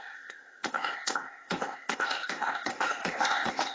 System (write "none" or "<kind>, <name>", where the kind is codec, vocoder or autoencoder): codec, ZipCodec